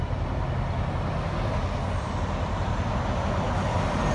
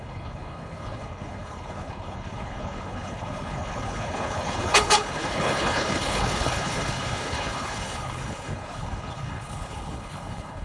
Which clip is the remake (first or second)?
second